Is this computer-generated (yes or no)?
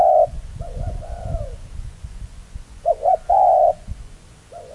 yes